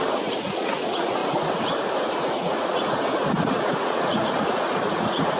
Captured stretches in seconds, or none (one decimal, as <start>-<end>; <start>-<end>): 1.2-2.0